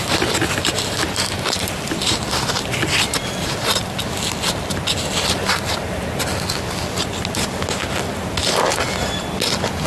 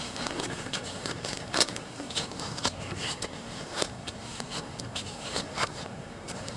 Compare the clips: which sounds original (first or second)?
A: first